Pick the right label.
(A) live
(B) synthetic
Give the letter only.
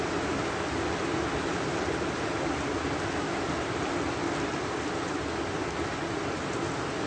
A